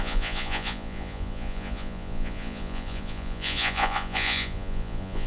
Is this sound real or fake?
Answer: fake